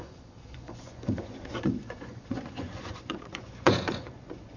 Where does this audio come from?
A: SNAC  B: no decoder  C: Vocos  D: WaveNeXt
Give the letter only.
C